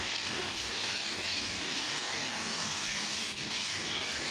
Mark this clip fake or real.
fake